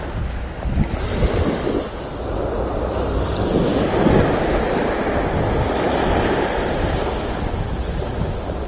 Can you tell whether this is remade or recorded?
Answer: recorded